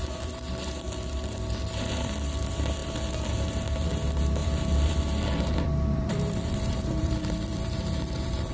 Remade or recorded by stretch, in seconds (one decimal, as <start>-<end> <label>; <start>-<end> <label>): 0.0-4.4 recorded; 4.4-8.5 remade